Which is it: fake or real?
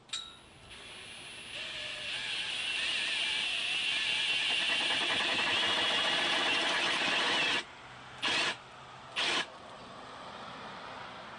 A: real